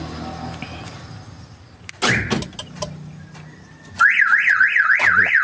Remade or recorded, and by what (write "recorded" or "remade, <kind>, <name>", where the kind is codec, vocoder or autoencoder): recorded